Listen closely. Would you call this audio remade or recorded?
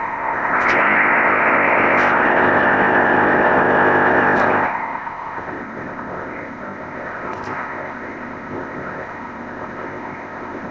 remade